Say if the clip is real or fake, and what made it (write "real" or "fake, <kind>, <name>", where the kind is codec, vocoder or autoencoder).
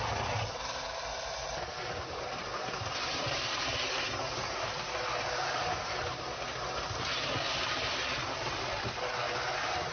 real